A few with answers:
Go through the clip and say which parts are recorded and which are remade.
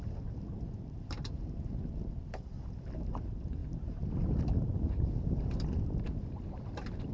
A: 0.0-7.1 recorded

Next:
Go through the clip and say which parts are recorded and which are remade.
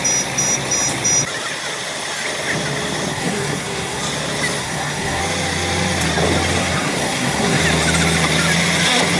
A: 0.0-3.1 recorded; 3.1-4.0 remade; 4.0-4.6 recorded; 4.6-5.2 remade; 5.2-6.6 recorded; 6.6-7.6 remade; 7.6-9.2 recorded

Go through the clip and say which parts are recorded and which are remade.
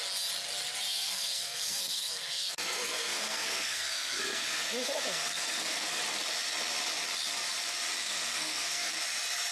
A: 0.0-0.9 recorded; 0.9-6.0 remade; 6.0-8.0 recorded; 8.0-8.9 remade; 8.9-9.5 recorded